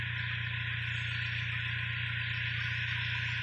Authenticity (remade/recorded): recorded